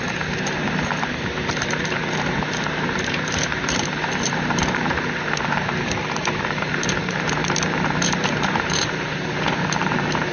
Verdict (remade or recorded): remade